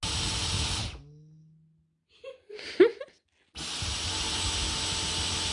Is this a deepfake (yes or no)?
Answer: no